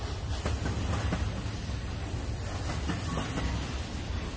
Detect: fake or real real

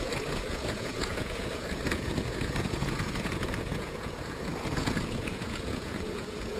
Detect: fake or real fake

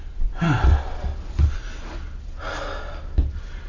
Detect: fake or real real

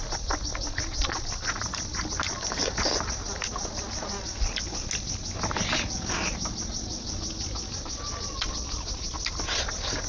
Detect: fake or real real